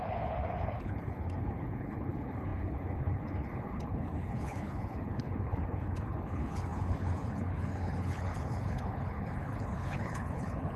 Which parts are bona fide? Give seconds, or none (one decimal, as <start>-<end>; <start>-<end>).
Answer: none